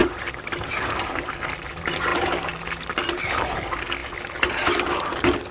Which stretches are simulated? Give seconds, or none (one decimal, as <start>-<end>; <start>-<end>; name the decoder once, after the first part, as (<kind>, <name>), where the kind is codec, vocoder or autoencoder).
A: 0.0-1.4 (vocoder, BigVGAN v2)